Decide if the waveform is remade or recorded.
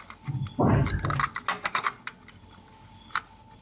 recorded